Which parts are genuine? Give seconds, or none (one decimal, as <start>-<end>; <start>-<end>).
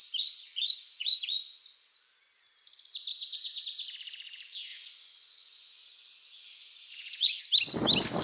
1.6-3.1; 3.6-4.7; 7.4-8.2